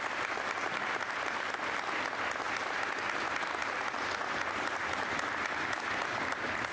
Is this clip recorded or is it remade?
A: recorded